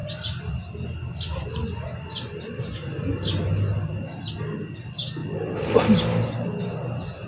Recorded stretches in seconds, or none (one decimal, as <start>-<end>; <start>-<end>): 0.0-7.3